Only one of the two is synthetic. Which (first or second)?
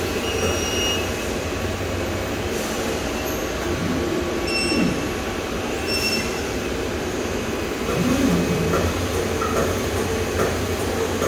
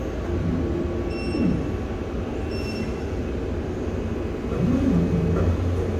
first